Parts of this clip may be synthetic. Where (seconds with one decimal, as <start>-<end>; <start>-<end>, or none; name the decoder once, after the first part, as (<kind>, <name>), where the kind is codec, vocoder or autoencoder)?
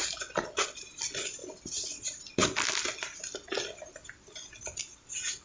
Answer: none